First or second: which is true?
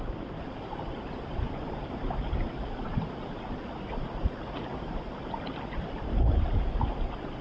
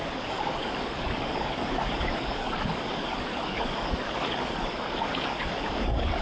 first